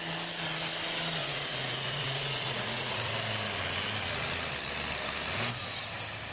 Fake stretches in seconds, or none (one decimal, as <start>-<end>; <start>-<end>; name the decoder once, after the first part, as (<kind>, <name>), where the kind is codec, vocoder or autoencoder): 1.2-3.1 (vocoder, Vocos)